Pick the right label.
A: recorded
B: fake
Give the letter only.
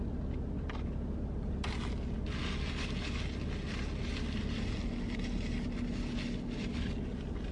A